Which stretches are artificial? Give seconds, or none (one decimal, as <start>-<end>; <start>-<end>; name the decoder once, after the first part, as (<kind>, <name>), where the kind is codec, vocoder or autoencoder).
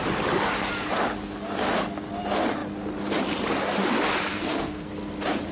4.3-4.9 (codec, SNAC)